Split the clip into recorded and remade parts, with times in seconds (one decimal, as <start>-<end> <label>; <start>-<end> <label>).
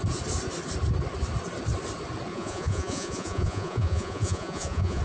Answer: 0.0-2.3 recorded; 2.3-5.0 remade